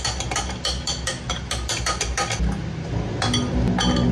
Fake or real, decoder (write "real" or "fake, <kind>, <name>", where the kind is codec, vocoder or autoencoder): real